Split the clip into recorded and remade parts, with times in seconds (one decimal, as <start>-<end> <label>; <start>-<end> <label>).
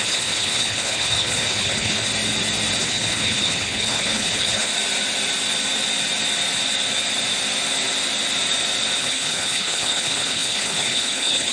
0.0-2.1 remade; 2.1-2.8 recorded; 2.8-4.7 remade; 4.7-9.0 recorded; 9.0-11.5 remade